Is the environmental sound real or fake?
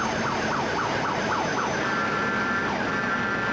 real